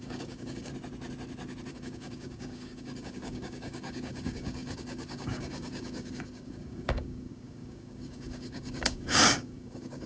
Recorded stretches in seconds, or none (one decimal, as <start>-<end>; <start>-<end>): 0.7-1.7